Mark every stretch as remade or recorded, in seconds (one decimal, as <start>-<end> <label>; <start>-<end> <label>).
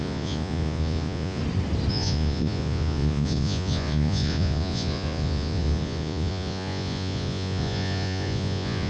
0.0-1.4 remade; 1.4-1.9 recorded; 1.9-8.9 remade